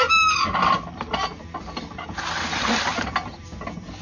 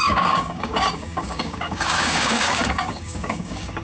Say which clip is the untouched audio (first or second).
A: first